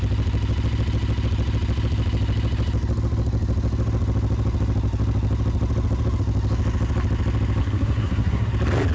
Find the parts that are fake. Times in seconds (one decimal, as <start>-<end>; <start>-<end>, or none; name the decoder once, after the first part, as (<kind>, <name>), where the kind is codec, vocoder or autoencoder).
7.6-8.5 (codec, SNAC)